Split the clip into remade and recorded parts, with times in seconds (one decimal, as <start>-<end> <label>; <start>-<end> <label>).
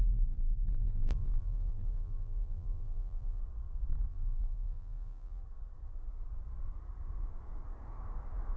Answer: 0.0-3.4 remade; 3.4-4.1 recorded; 4.1-5.4 remade; 5.4-8.6 recorded